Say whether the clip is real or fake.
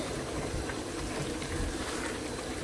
fake